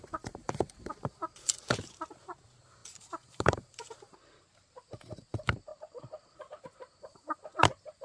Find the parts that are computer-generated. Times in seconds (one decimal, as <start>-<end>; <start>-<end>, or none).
0.0-5.7; 6.6-8.0